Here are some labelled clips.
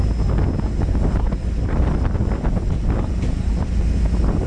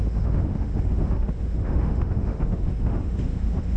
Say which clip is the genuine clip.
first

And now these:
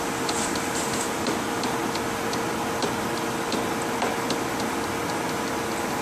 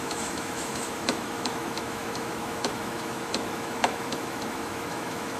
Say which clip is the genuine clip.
first